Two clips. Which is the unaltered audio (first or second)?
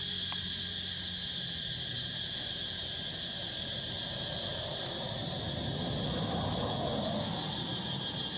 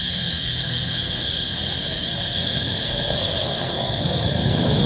first